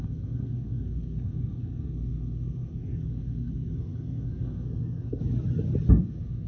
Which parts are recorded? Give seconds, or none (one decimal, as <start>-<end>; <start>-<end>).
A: 5.2-5.9